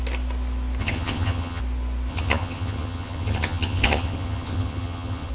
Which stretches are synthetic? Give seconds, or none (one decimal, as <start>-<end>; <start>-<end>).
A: 0.8-1.6; 2.1-5.3